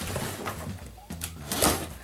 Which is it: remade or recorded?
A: recorded